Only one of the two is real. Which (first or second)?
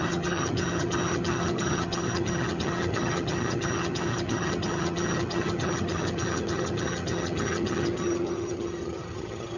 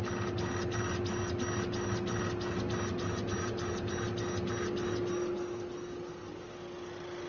second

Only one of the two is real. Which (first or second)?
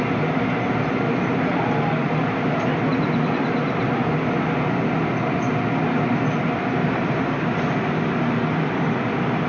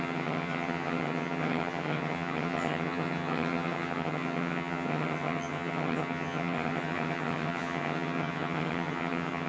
first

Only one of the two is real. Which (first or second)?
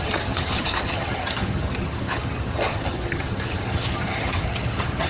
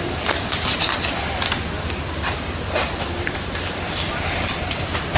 second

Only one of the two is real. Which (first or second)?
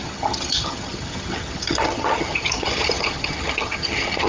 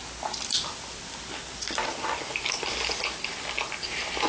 second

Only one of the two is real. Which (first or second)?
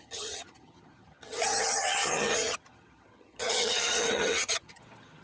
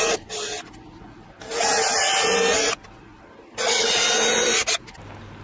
second